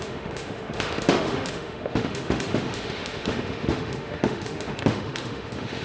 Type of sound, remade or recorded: remade